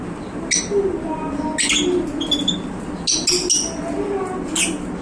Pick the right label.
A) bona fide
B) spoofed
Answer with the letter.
A